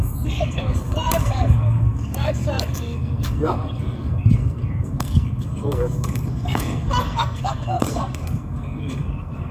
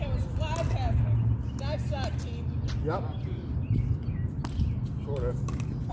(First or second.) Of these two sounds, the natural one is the second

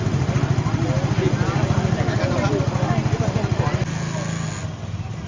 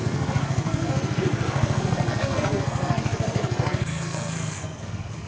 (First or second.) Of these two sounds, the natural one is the first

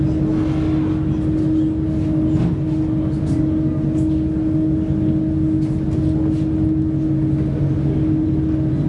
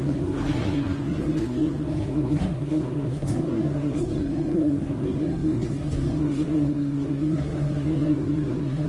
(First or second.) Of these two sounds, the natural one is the first